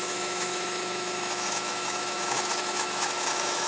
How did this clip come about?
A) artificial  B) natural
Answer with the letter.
A